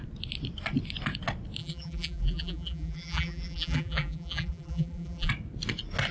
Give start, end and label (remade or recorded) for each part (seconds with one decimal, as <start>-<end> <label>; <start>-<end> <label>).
0.0-1.6 recorded; 1.6-5.3 remade; 5.3-6.1 recorded